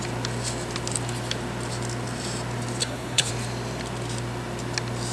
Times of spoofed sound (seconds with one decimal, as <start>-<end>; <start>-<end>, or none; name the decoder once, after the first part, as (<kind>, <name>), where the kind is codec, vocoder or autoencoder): 2.8-3.3 (codec, SNAC)